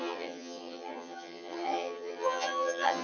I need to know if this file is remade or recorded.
remade